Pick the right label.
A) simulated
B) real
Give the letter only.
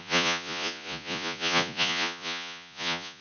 A